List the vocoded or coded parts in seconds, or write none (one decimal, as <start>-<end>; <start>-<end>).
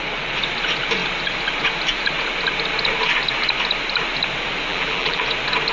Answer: 4.7-5.2